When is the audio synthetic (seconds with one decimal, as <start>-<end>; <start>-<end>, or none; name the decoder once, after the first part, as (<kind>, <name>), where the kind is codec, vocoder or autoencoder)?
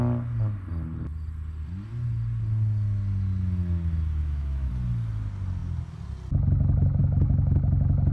4.2-4.7 (autoencoder, DAC-VAE); 7.0-7.6